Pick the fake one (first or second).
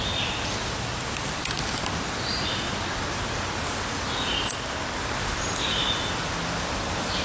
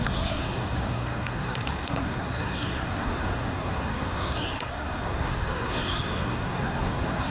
second